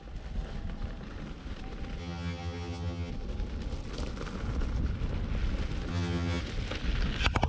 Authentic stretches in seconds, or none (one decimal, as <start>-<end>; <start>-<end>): 0.0-2.0; 3.1-5.9; 6.4-7.5